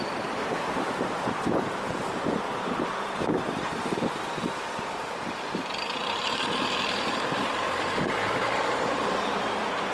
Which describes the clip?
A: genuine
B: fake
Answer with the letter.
B